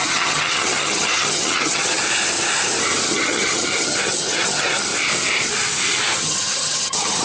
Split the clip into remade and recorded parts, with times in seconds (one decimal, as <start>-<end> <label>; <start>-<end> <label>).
0.0-2.0 remade; 2.0-3.1 recorded; 3.1-4.9 remade; 4.9-6.2 recorded; 6.2-7.2 remade

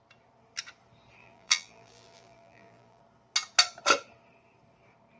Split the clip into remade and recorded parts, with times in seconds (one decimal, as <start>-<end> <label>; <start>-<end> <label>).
0.0-1.2 recorded; 1.2-3.0 remade; 3.0-5.2 recorded

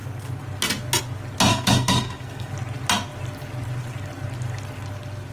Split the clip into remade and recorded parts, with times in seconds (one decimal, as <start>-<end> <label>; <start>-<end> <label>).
0.0-1.5 recorded; 1.5-2.5 remade; 2.5-5.3 recorded

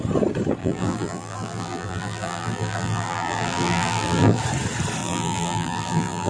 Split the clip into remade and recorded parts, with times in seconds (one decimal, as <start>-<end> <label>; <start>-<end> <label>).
0.0-0.6 recorded; 0.6-4.4 remade; 4.4-5.0 recorded; 5.0-6.3 remade

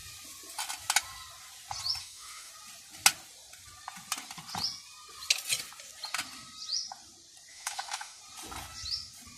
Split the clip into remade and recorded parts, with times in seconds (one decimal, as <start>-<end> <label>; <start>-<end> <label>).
0.0-2.0 recorded; 2.0-2.5 remade; 2.5-7.5 recorded; 7.5-8.2 remade; 8.2-9.4 recorded